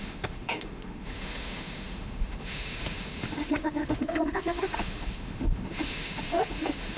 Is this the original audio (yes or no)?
no